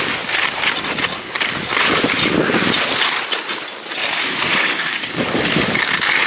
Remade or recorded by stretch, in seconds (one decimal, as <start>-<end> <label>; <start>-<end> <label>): 0.0-4.5 recorded; 4.5-5.2 remade; 5.2-6.3 recorded